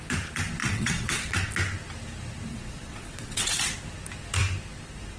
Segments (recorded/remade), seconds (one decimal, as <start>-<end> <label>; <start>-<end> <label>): 0.0-0.6 recorded; 0.6-1.5 remade; 1.5-2.5 recorded; 2.5-3.7 remade; 3.7-5.2 recorded